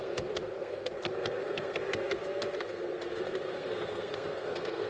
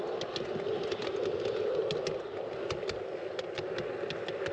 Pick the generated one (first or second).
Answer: first